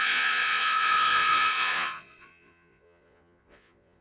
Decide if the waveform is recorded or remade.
remade